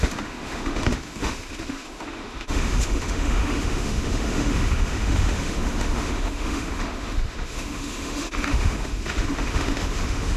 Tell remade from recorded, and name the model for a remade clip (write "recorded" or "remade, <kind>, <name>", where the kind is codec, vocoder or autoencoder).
remade, autoencoder, DAC-VAE